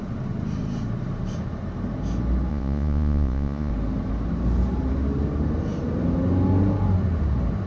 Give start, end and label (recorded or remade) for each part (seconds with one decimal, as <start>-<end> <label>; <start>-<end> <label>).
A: 0.0-2.5 recorded; 2.5-3.7 remade; 3.7-7.7 recorded